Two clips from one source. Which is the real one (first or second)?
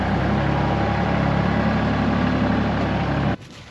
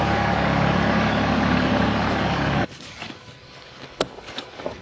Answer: first